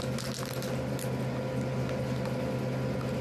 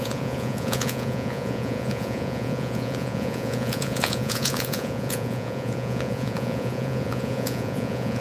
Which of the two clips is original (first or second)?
first